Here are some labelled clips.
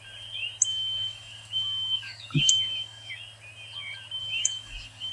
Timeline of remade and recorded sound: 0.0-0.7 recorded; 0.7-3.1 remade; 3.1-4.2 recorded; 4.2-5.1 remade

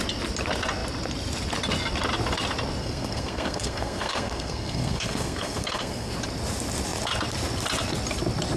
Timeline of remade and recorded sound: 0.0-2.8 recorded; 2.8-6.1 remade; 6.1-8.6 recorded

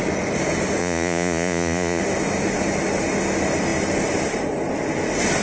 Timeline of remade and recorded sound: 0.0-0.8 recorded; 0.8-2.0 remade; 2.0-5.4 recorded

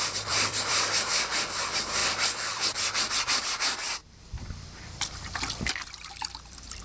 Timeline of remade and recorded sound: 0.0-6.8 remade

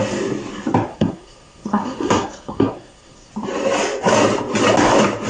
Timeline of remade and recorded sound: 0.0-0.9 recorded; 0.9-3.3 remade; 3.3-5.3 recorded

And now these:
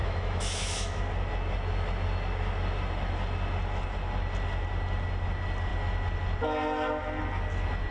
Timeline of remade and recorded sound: 0.0-1.0 remade; 1.0-7.9 recorded

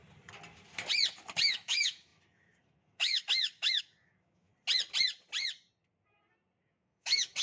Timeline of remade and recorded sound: 0.0-1.5 recorded; 1.5-4.5 remade; 4.5-6.6 recorded; 6.6-7.4 remade